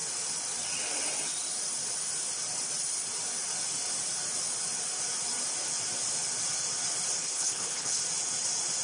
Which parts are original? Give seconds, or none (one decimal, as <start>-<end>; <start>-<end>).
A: 0.0-7.2; 8.0-8.8

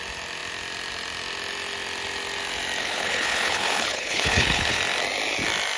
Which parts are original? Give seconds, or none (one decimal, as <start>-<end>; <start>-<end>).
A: 0.0-2.8; 4.8-5.8

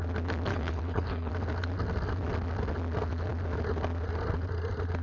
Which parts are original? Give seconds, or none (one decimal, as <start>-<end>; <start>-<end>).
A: 0.0-0.5; 1.3-5.0

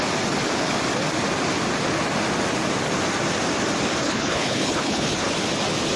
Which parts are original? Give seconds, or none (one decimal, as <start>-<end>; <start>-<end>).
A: 0.0-4.0; 5.3-6.0

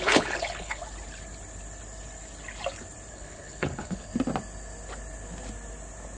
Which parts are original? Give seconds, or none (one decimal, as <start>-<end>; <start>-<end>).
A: 0.8-3.1; 4.1-6.2

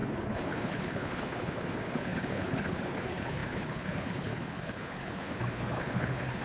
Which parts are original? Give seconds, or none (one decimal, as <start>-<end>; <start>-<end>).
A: none

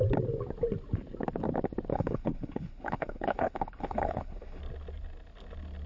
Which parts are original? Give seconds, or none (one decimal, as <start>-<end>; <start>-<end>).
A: 0.0-1.9; 4.6-5.9

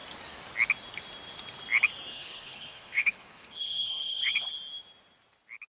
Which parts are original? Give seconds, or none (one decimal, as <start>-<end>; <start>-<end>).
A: 0.0-2.1; 4.5-5.8